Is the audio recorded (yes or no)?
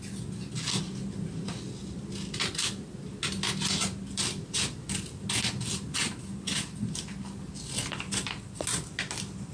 yes